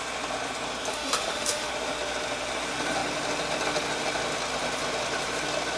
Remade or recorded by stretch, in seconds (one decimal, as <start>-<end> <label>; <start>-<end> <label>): 0.0-0.9 recorded; 0.9-1.7 remade; 1.7-5.8 recorded